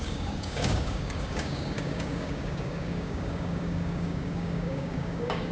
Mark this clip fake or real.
fake